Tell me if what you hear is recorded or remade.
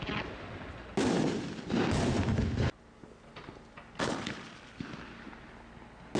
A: recorded